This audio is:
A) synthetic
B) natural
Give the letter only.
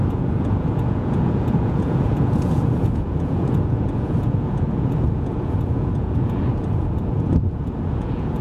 A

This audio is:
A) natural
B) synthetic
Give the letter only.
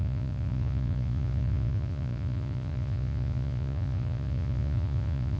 B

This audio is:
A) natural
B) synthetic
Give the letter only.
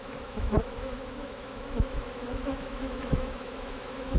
B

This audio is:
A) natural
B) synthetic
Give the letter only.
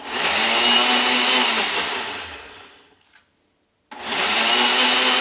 A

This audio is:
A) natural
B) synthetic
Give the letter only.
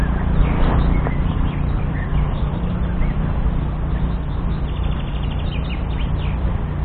B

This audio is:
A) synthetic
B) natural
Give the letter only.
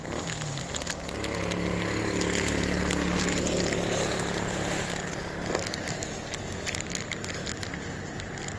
B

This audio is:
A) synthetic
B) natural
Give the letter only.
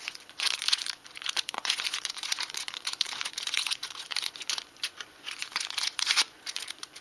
A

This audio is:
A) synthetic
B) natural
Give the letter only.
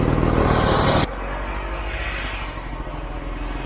B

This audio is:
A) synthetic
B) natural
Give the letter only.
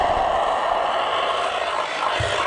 B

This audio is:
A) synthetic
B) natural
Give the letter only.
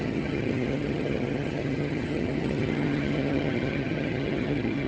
A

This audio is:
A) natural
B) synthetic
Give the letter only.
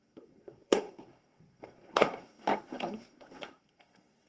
B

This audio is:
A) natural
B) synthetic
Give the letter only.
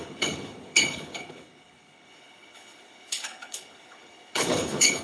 B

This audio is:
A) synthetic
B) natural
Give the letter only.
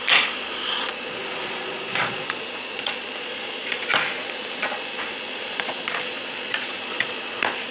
A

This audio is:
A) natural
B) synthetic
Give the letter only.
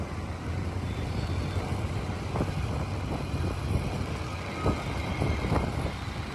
A